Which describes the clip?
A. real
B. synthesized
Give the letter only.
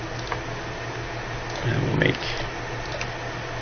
A